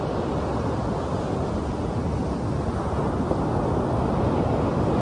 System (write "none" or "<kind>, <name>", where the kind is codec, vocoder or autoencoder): none